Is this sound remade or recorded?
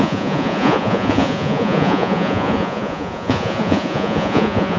remade